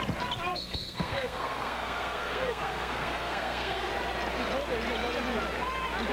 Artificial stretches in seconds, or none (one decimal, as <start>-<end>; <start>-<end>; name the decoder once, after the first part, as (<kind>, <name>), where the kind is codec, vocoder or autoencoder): 0.5-3.9 (codec, SNAC)